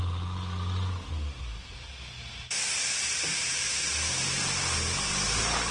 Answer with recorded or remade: recorded